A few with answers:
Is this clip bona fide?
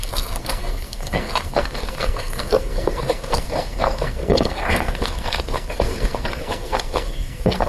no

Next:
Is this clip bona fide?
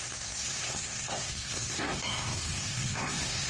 no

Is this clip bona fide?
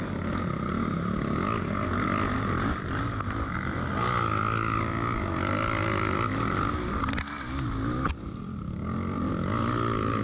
yes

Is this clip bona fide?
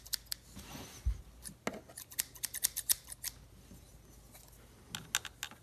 yes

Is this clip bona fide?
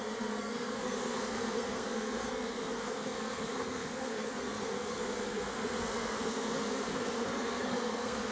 no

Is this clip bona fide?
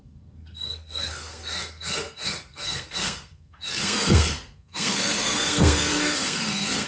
no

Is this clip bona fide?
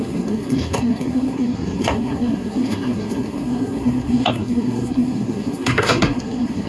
no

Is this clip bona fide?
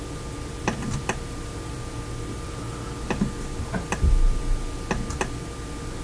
yes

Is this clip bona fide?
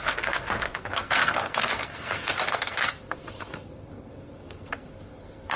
no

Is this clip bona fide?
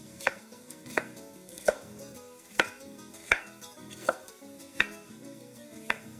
no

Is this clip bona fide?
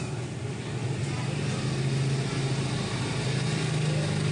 yes